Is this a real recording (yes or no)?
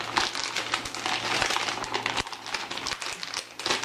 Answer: yes